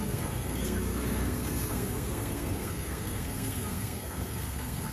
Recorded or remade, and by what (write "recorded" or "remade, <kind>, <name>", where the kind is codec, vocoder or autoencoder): remade, codec, SNAC